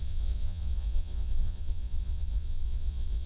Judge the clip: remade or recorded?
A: remade